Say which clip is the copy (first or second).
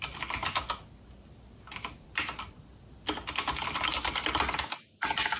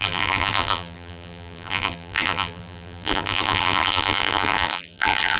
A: second